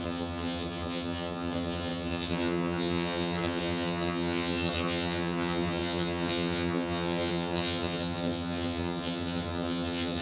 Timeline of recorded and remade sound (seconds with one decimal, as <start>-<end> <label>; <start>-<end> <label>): 0.0-10.2 remade